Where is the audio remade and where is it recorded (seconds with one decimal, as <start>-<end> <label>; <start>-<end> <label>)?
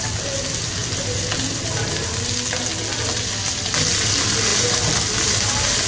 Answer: 0.0-5.9 recorded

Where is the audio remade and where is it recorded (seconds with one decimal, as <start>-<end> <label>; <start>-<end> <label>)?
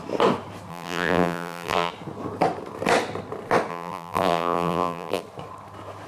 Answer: 0.0-0.7 recorded; 0.7-1.9 remade; 1.9-3.7 recorded; 3.7-5.2 remade; 5.2-6.1 recorded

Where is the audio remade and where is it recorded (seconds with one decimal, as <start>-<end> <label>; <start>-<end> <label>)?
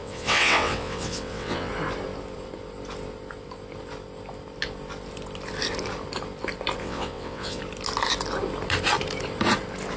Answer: 0.0-1.7 remade; 1.7-6.8 recorded; 6.8-7.6 remade; 7.6-10.0 recorded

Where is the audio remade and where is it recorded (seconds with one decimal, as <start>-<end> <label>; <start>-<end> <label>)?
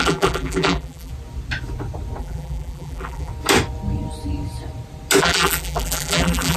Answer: 0.0-1.1 remade; 1.1-2.2 recorded; 2.2-3.3 remade; 3.3-5.2 recorded; 5.2-6.6 remade